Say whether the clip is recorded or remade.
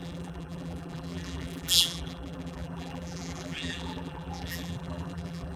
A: remade